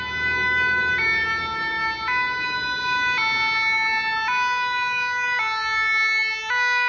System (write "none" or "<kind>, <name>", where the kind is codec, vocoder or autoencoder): none